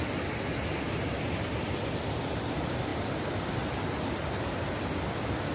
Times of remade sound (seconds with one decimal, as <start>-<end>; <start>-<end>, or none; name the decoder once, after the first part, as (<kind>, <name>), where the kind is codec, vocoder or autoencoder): none